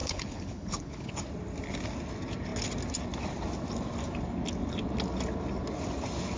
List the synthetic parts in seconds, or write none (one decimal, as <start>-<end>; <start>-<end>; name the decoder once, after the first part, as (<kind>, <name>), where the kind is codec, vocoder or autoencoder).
0.0-1.1 (codec, HILCodec)